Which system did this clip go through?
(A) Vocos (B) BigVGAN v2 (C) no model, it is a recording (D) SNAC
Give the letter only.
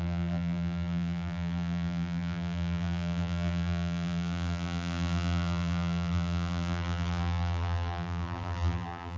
B